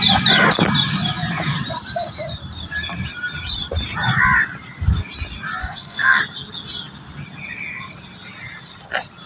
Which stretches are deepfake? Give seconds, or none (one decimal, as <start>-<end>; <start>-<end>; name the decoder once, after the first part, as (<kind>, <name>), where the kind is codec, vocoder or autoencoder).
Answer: 5.6-6.2 (codec, SNAC)